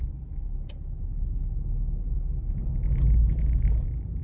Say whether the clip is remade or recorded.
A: recorded